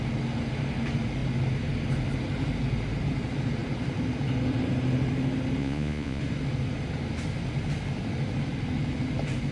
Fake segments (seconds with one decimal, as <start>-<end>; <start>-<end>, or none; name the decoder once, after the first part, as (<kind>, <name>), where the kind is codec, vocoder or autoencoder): 5.6-6.2 (vocoder, Vocos)